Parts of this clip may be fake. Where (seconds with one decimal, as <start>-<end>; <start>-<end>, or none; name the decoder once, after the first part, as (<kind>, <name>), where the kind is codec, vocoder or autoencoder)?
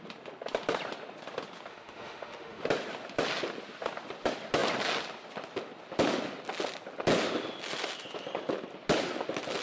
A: 1.7-2.6 (autoencoder, DAC-VAE)